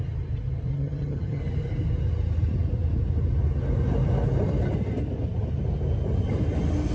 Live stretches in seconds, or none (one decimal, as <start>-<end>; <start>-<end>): 0.0-0.7; 1.4-6.9